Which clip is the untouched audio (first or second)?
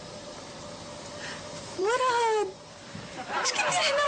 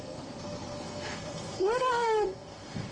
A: first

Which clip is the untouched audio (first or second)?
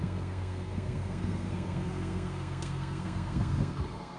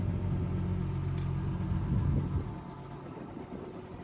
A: second